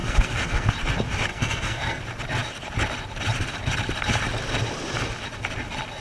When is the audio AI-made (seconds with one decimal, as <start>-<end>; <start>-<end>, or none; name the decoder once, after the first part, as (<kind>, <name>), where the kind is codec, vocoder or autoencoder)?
0.0-0.7 (codec, SNAC); 1.3-2.0